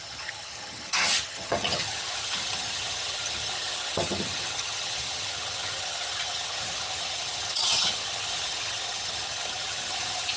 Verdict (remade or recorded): remade